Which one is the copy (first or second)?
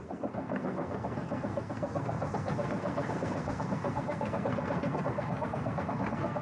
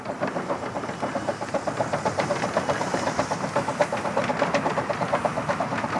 first